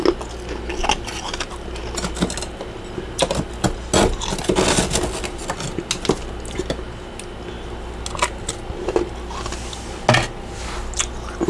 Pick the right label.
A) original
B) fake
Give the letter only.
A